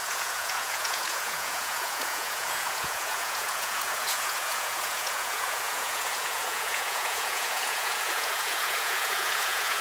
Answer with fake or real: fake